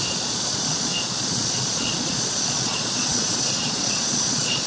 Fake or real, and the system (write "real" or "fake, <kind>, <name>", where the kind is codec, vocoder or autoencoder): fake, vocoder, Vocos